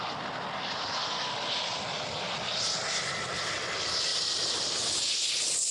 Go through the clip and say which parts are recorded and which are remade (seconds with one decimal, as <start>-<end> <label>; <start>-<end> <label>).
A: 0.0-4.1 recorded; 4.1-5.3 remade; 5.3-5.7 recorded